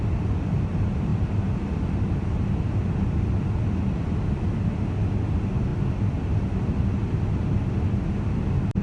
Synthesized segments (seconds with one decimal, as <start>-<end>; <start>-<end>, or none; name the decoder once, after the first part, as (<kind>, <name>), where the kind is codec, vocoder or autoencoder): none